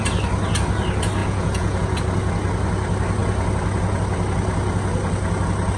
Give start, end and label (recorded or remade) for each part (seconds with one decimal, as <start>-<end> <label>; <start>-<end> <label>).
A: 0.0-1.2 recorded; 1.2-2.0 remade; 2.0-5.8 recorded